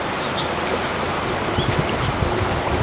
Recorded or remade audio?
remade